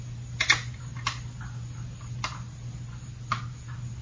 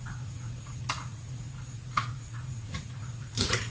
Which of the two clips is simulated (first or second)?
second